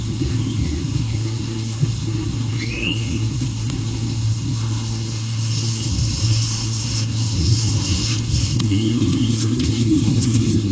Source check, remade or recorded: remade